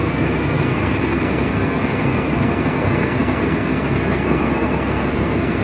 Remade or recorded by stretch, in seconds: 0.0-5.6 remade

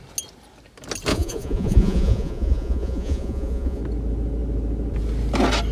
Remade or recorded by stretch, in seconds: 0.0-1.1 recorded; 1.1-3.8 remade; 3.8-5.7 recorded

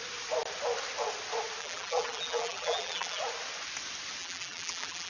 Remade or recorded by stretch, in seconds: 0.0-1.6 recorded; 1.6-3.2 remade; 3.2-4.2 recorded; 4.2-5.1 remade